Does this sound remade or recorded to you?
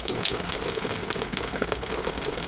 remade